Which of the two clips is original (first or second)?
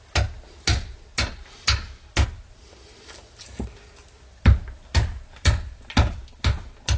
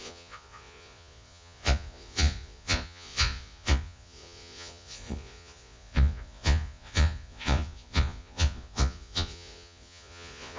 first